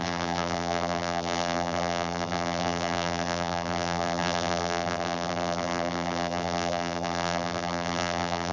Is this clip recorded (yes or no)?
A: no